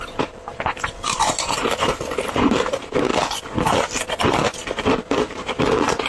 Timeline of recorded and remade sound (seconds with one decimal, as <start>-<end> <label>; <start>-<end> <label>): 0.0-3.1 remade; 3.1-5.6 recorded; 5.6-6.1 remade